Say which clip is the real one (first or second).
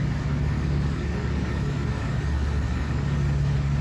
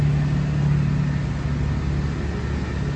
second